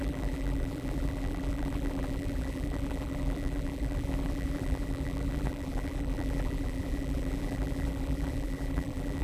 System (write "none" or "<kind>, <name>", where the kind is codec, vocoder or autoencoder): vocoder, BigVGAN v2